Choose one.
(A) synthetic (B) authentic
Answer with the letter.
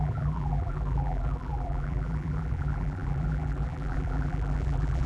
A